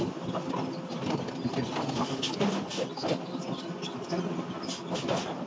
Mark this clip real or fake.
real